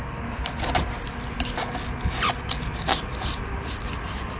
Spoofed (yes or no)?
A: no